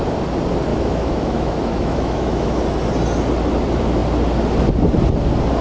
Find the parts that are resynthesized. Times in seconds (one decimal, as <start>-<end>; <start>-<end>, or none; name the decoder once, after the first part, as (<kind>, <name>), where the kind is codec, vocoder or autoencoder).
0.7-2.6 (autoencoder, DAC-VAE)